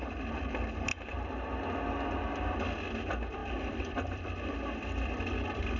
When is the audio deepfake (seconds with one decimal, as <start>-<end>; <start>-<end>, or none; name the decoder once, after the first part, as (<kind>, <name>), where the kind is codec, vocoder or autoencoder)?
3.4-5.8 (vocoder, BigVGAN v2)